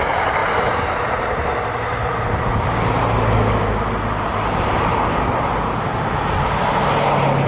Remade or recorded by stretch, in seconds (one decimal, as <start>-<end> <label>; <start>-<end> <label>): 0.0-7.5 recorded